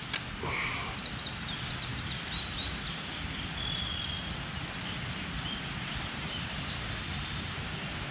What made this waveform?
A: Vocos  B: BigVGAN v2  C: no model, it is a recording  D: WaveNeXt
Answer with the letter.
C